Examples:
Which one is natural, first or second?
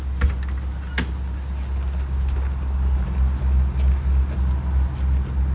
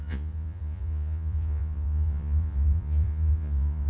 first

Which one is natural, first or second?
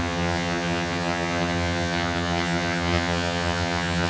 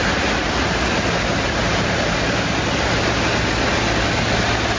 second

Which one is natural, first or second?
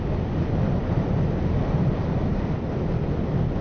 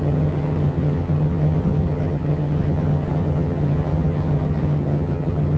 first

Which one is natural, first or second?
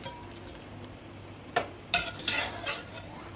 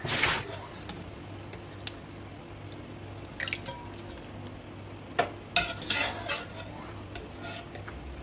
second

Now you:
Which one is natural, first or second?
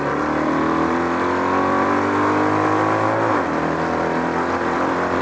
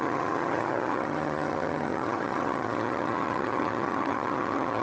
first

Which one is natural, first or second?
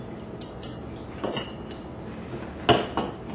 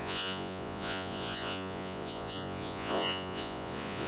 first